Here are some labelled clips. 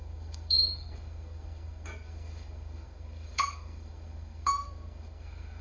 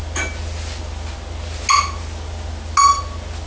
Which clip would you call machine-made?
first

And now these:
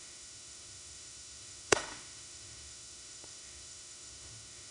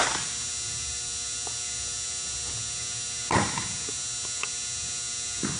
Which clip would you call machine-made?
first